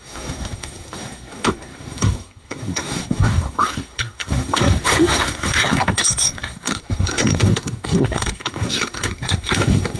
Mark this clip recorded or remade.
remade